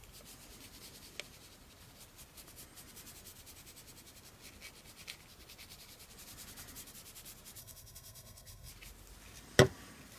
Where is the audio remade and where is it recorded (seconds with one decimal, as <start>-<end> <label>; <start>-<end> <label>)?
0.0-7.6 recorded; 7.6-8.7 remade; 8.7-10.2 recorded